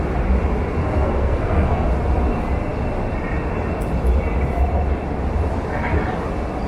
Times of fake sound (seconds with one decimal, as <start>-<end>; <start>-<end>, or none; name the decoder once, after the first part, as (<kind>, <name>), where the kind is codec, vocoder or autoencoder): 0.8-1.9 (codec, SNAC)